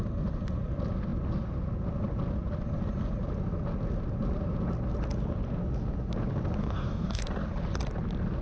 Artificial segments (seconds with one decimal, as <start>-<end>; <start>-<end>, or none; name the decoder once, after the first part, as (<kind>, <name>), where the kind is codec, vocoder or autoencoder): 6.6-7.2 (codec, DAC)